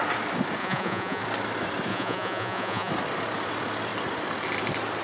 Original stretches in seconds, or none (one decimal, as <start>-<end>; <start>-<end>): 0.0-0.6; 1.2-1.9; 2.9-5.0